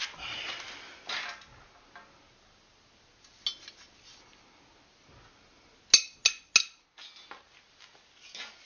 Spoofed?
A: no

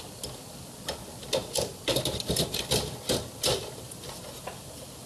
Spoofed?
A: no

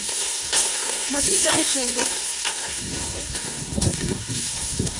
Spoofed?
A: yes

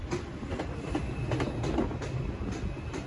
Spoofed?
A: no